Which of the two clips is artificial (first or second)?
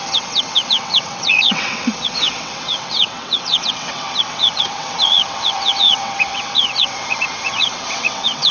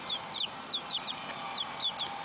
first